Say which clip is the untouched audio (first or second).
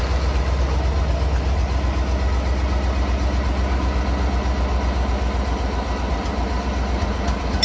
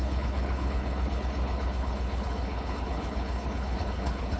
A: first